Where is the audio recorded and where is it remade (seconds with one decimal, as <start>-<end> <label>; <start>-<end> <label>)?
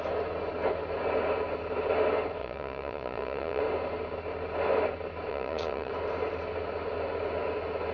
0.0-2.4 recorded; 2.4-3.6 remade; 3.6-5.3 recorded; 5.3-5.9 remade; 5.9-7.9 recorded